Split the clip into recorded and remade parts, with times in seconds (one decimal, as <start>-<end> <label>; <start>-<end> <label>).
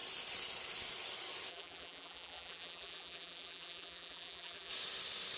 0.0-1.5 recorded; 1.5-4.7 remade; 4.7-5.4 recorded